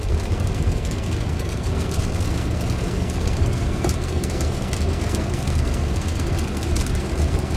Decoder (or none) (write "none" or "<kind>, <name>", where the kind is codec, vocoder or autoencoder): codec, SNAC